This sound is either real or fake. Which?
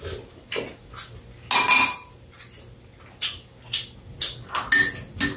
real